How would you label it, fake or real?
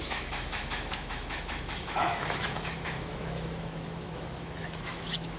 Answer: fake